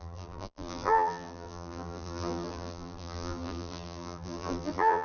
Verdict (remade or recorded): remade